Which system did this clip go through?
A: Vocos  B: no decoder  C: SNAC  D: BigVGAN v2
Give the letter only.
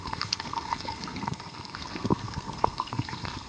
C